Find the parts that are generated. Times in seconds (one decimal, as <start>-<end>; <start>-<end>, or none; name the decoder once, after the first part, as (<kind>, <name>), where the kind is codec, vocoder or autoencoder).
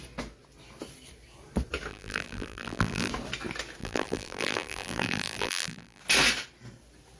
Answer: 1.9-3.1 (vocoder, BigVGAN v2); 3.8-6.0